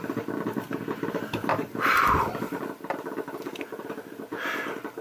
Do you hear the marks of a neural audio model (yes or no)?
yes